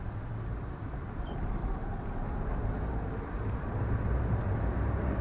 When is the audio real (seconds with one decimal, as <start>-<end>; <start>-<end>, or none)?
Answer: none

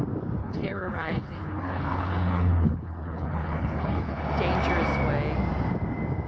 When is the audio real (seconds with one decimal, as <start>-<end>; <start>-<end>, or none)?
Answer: 0.0-0.4; 4.2-6.3

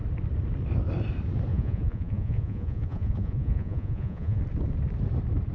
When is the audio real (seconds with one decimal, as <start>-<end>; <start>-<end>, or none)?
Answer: 0.0-1.5; 4.4-5.5

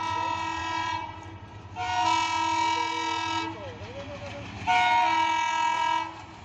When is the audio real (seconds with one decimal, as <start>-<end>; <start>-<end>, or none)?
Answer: 0.0-0.6; 1.5-6.4